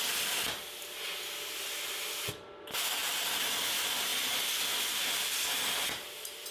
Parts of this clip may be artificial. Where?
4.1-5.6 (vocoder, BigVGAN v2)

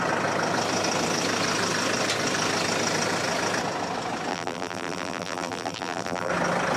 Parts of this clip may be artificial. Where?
4.3-6.3 (vocoder, BigVGAN v2)

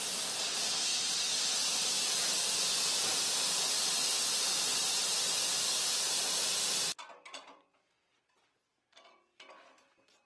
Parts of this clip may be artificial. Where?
none

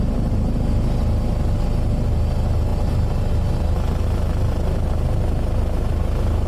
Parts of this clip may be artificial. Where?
none

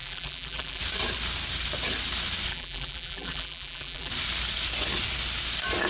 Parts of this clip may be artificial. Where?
0.0-0.8 (vocoder, BigVGAN v2); 2.5-4.1

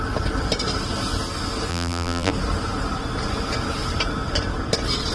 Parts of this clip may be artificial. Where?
1.7-2.3 (vocoder, BigVGAN v2)

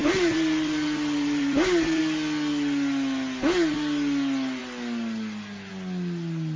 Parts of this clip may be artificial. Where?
0.0-2.0 (vocoder, BigVGAN v2)

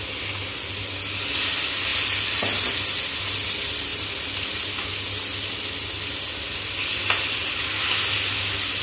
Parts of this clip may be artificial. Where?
1.9-3.0 (vocoder, BigVGAN v2)